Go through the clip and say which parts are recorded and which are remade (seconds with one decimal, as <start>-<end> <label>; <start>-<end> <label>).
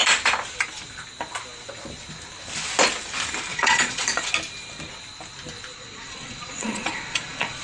0.0-3.5 recorded; 3.5-4.3 remade; 4.3-5.7 recorded; 5.7-7.6 remade